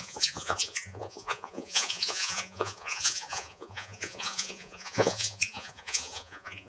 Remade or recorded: remade